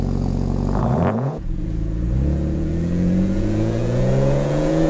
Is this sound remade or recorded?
remade